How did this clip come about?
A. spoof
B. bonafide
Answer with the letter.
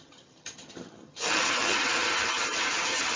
A